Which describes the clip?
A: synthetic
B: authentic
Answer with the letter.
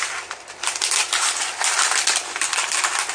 B